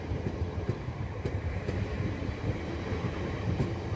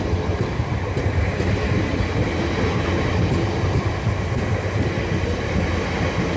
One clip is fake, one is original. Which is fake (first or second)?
first